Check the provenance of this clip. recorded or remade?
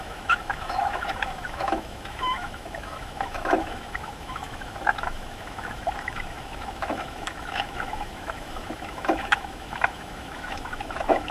remade